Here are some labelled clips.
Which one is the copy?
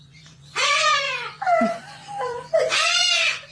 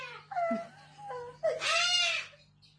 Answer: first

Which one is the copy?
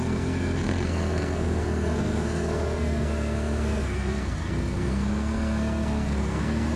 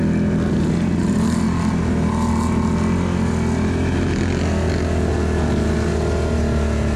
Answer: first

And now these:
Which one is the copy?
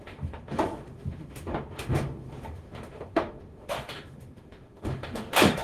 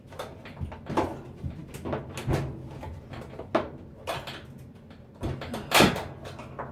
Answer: first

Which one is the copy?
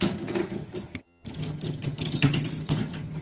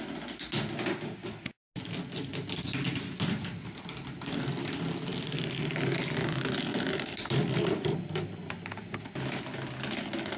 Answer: first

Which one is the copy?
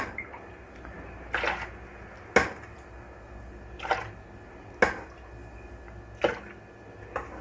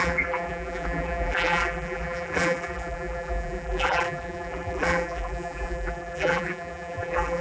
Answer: second